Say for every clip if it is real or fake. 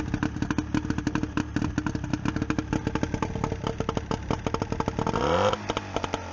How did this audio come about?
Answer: real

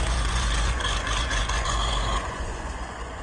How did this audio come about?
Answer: fake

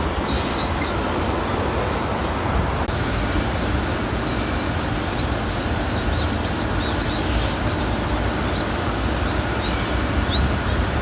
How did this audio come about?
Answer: real